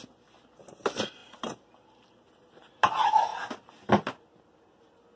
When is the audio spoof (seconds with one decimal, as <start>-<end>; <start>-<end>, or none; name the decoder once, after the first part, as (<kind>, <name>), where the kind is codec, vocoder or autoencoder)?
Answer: none